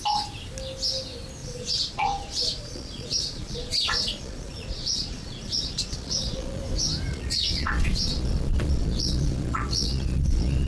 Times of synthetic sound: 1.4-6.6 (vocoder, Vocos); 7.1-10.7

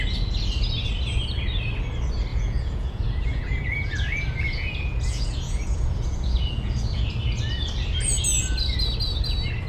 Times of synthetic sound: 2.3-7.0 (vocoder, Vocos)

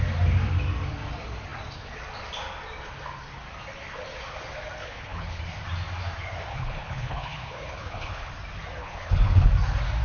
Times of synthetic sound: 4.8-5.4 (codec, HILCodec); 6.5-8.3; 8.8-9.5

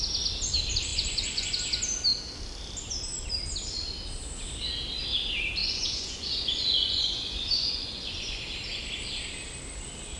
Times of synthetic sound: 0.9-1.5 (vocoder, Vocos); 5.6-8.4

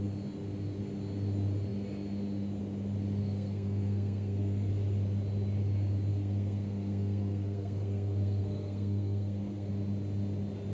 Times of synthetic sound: 3.2-4.7 (codec, SNAC); 6.1-9.7

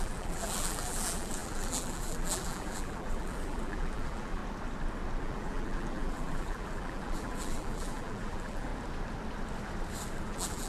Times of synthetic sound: 0.0-4.4 (vocoder, BigVGAN v2); 5.2-8.7; 10.2-10.7